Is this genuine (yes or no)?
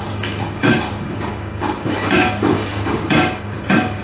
no